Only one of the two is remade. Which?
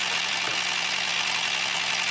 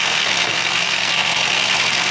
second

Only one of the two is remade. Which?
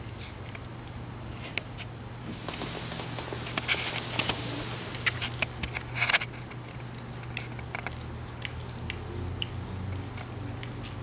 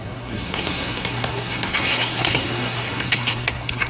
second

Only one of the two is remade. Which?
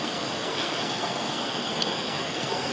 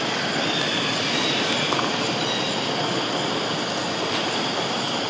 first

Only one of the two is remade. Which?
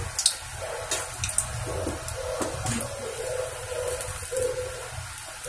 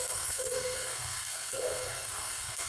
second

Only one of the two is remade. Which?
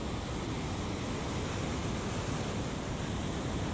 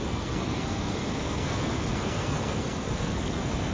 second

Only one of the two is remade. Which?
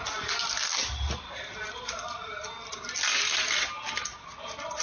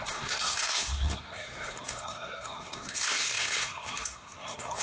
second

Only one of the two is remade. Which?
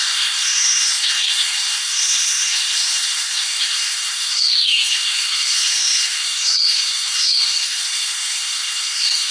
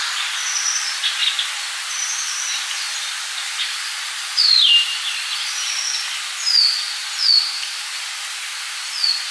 first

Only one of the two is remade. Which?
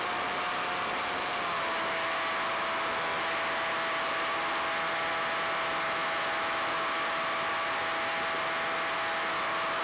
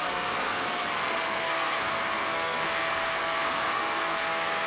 second